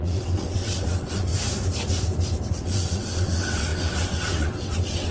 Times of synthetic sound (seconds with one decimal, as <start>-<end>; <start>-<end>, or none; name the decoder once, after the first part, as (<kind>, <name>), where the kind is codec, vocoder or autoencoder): 0.0-1.3 (vocoder, WaveNeXt); 2.5-5.1